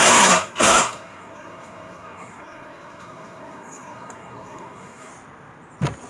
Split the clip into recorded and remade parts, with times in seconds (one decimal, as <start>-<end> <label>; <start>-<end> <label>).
0.0-5.1 remade; 5.1-6.1 recorded